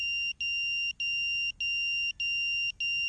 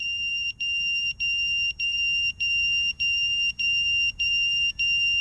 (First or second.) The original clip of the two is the first